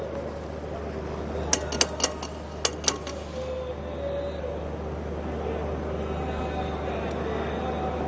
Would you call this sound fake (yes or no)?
no